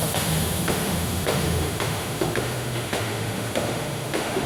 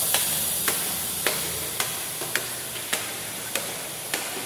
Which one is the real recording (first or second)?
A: second